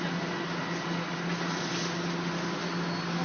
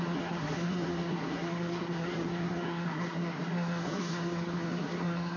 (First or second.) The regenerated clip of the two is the second